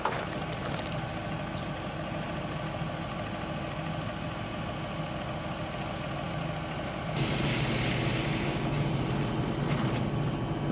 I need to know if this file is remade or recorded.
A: recorded